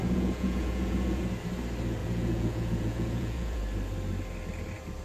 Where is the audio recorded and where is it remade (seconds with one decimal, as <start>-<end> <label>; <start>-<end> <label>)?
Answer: 0.0-1.2 remade; 1.2-2.0 recorded; 2.0-3.6 remade; 3.6-5.0 recorded